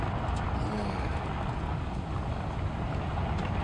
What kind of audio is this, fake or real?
real